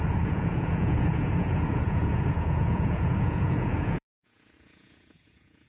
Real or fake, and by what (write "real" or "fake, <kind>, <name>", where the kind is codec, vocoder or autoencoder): fake, vocoder, Vocos